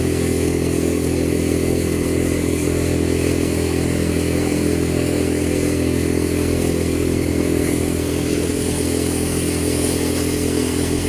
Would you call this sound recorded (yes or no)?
no